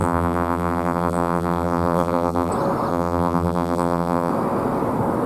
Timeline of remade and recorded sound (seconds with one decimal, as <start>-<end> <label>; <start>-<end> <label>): 0.0-2.5 remade; 2.5-2.9 recorded; 2.9-4.3 remade; 4.3-5.3 recorded